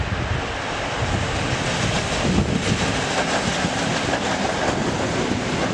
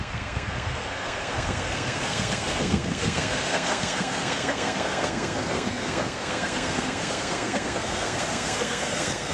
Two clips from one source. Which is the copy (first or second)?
second